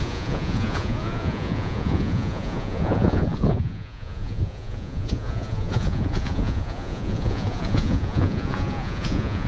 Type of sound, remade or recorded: remade